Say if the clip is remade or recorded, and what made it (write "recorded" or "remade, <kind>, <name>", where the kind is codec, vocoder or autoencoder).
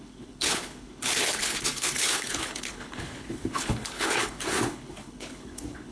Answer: remade, codec, HILCodec